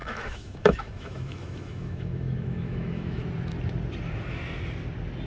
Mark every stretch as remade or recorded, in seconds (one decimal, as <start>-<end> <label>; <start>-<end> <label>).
0.0-3.2 remade; 3.2-5.3 recorded